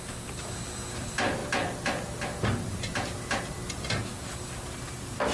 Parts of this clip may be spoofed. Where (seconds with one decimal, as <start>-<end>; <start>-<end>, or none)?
none